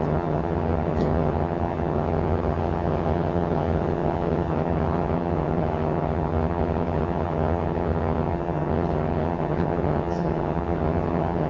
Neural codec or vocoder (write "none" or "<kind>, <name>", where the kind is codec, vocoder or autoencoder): vocoder, HiFi-GAN